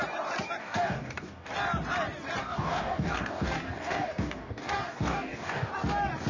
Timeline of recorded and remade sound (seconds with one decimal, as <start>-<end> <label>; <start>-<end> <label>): 0.0-0.6 recorded; 0.6-1.5 remade; 1.5-2.4 recorded; 2.4-5.7 remade; 5.7-6.3 recorded